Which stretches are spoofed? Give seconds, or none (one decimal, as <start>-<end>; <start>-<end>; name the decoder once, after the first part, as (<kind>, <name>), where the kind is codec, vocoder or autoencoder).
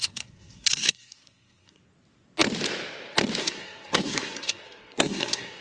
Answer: 0.0-1.8 (codec, SNAC); 3.4-5.6